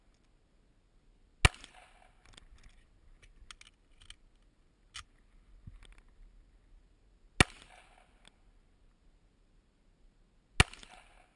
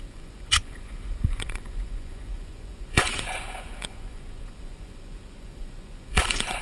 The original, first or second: first